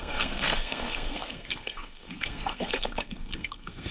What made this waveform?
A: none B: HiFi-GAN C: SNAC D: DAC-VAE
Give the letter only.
C